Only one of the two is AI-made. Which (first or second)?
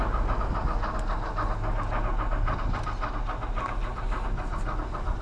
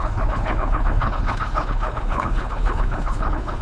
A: second